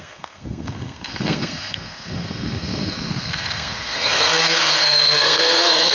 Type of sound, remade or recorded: remade